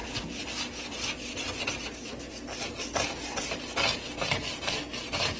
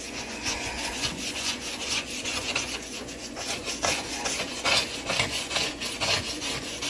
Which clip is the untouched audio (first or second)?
first